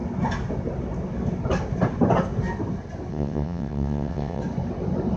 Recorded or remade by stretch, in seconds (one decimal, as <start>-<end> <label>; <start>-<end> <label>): 0.0-3.1 recorded; 3.1-4.4 remade; 4.4-5.2 recorded